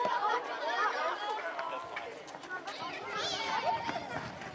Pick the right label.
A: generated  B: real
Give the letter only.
A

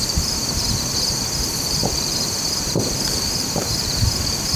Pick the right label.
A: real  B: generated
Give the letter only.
B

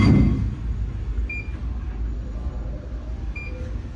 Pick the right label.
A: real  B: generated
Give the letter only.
A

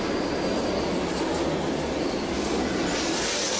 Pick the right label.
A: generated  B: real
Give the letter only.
B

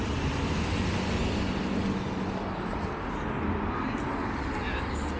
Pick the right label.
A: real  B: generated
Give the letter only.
A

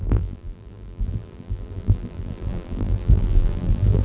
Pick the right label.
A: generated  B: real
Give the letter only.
A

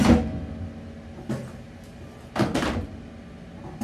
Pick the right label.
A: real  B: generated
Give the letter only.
A